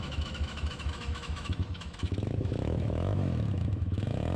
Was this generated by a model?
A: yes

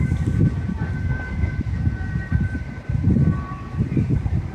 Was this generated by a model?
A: no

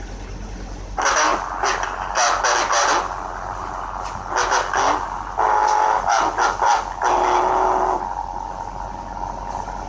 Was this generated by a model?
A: no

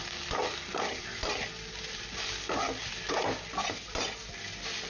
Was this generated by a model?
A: no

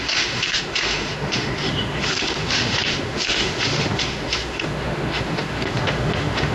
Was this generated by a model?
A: yes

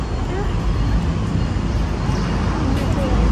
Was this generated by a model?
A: no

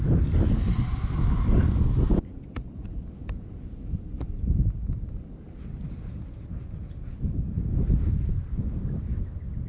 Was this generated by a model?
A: no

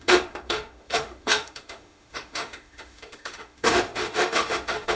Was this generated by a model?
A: yes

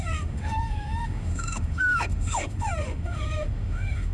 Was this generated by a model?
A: yes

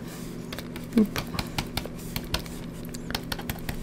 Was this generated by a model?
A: no